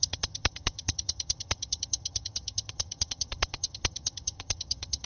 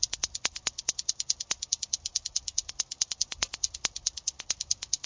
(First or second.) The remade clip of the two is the first